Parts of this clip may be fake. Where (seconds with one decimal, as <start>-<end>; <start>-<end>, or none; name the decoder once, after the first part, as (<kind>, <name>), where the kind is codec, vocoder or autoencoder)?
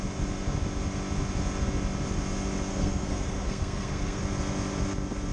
2.7-4.2 (codec, SNAC)